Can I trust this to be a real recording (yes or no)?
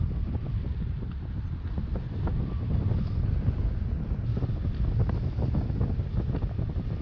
yes